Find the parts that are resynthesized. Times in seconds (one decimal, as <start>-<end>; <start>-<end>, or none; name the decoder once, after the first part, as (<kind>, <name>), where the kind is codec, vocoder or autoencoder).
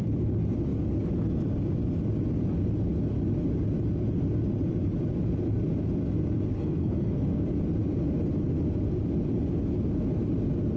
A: 6.5-7.5 (codec, SNAC)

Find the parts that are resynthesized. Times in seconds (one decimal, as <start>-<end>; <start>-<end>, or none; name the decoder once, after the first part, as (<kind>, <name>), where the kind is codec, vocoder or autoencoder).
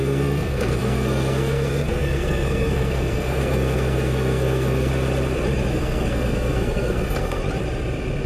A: 0.0-4.9 (codec, SNAC); 5.7-7.4